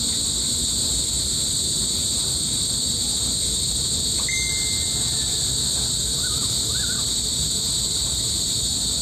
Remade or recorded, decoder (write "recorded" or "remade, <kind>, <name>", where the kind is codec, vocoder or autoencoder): recorded